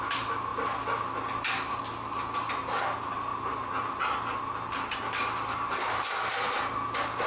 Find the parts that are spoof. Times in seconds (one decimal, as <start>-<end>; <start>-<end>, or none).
none